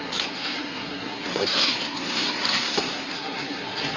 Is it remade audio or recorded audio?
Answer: remade